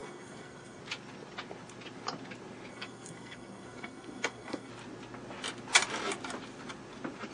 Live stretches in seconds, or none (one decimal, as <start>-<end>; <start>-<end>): 0.8-2.7; 4.7-7.3